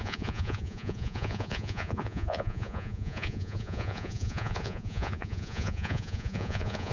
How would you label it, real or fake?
fake